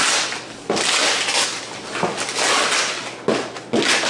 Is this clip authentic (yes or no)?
yes